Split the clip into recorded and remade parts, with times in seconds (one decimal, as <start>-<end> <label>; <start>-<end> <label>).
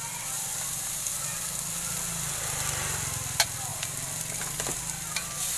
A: 0.0-5.6 recorded